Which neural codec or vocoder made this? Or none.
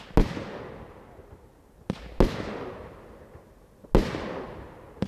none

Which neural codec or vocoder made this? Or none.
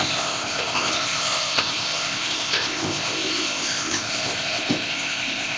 codec, ZipCodec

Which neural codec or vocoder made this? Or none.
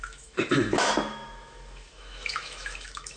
autoencoder, DAC-VAE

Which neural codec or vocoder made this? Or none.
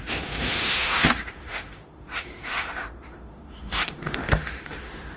autoencoder, DAC-VAE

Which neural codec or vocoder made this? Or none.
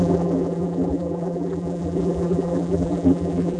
vocoder, BigVGAN v2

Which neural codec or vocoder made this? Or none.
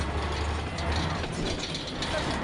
none